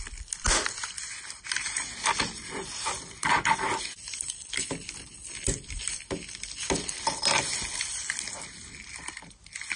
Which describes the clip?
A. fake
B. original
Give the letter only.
B